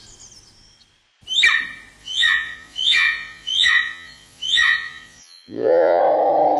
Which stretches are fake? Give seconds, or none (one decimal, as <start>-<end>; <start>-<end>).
2.0-6.0